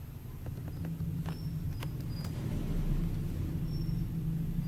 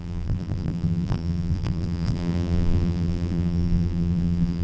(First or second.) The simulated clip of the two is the second